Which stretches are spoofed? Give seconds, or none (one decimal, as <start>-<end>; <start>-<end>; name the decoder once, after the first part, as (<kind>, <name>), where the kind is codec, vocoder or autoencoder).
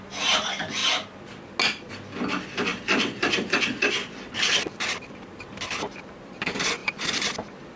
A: 0.0-0.8 (vocoder, BigVGAN v2); 1.9-7.8